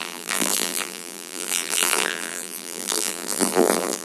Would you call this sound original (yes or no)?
no